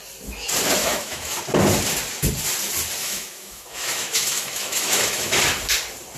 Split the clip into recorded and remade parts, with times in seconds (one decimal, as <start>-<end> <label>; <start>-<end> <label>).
0.0-0.8 recorded; 0.8-1.4 remade; 1.4-3.0 recorded; 3.0-5.4 remade; 5.4-6.2 recorded